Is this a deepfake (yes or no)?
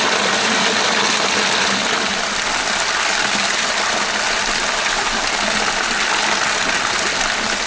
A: no